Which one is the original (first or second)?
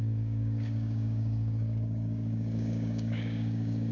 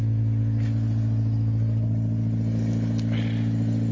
second